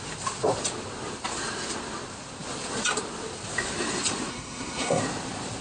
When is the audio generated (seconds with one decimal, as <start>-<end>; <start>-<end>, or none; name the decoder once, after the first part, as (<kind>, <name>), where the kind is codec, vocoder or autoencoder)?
4.3-5.0 (codec, SNAC)